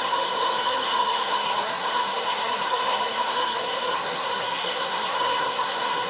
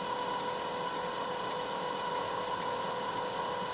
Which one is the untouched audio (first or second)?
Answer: second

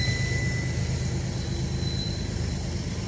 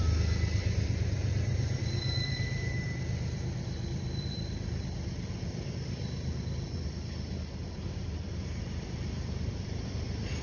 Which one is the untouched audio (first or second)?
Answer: first